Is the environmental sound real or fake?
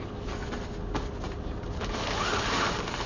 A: real